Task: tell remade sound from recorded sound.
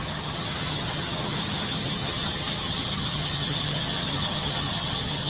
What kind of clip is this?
remade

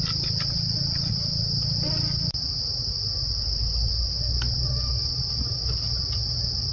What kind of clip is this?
recorded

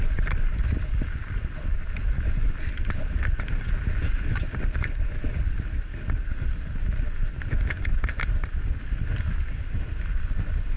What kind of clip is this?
remade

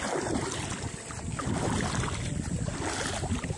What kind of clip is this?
recorded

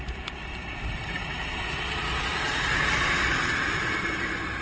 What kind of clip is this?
remade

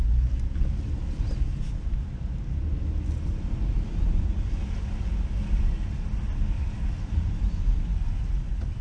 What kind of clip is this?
recorded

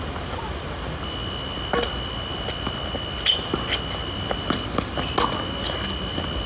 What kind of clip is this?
recorded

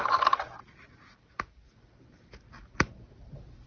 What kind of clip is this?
recorded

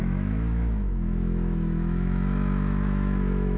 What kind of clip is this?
remade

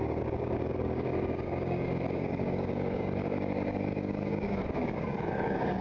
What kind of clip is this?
remade